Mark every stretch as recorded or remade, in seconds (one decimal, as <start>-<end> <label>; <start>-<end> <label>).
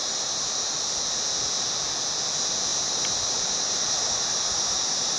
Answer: 0.0-0.8 remade; 0.8-2.7 recorded; 2.7-5.2 remade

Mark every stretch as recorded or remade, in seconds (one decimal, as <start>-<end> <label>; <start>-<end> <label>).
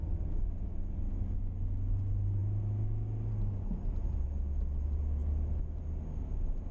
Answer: 0.0-6.7 recorded